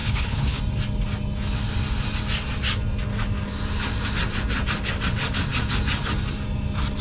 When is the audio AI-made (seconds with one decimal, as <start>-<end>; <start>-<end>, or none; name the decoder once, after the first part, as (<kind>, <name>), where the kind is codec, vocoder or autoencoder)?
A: 0.0-0.6 (codec, HILCodec)